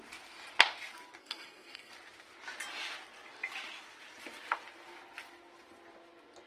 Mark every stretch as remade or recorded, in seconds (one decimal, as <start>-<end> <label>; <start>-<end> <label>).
0.0-1.2 recorded; 1.2-1.9 remade; 1.9-6.5 recorded